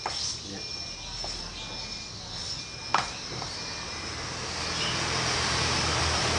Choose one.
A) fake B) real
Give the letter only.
B